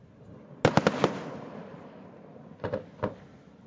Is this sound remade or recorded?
recorded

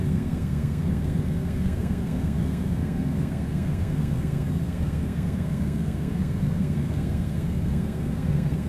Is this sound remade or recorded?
remade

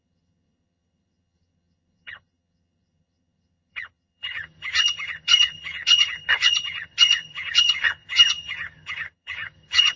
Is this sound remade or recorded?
remade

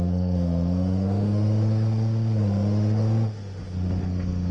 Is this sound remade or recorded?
remade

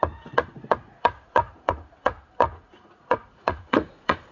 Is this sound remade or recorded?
remade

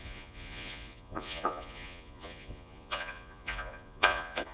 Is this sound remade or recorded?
remade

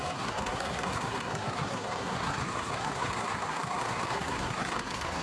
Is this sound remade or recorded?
remade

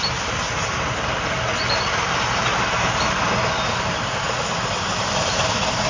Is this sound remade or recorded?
recorded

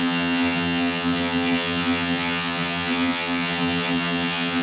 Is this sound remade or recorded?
remade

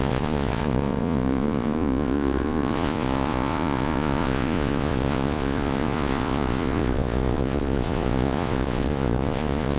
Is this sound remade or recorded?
remade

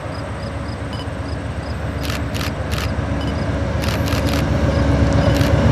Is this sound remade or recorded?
recorded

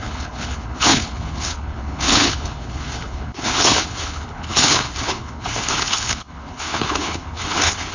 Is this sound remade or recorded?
remade